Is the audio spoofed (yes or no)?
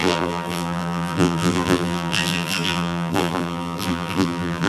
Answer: yes